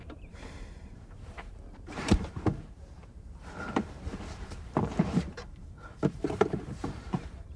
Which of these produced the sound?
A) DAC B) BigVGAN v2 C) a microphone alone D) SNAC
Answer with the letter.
B